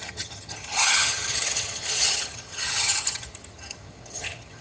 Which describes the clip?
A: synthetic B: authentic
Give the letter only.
A